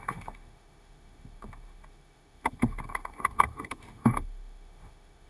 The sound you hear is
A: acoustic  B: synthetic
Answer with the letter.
B